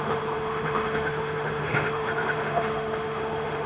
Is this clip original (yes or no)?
no